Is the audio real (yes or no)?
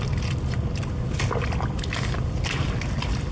yes